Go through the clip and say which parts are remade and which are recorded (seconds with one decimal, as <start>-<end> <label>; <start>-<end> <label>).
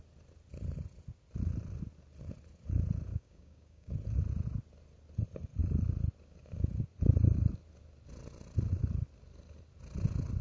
0.0-3.1 recorded; 3.1-3.9 remade; 3.9-10.4 recorded